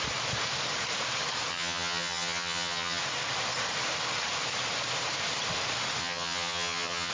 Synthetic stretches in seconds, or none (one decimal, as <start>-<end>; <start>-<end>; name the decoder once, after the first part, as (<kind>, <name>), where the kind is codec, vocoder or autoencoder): 1.5-3.0 (vocoder, HiFi-GAN); 6.0-7.1